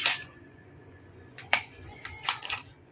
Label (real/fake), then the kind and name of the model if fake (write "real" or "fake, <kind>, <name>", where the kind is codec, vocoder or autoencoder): fake, vocoder, Vocos